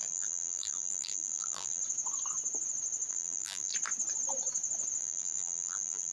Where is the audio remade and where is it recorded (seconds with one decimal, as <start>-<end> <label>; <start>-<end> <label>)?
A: 0.0-1.8 remade; 1.8-3.1 recorded; 3.1-3.7 remade; 3.7-5.0 recorded; 5.0-6.1 remade